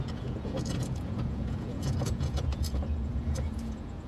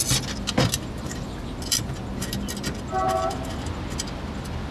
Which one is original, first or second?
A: second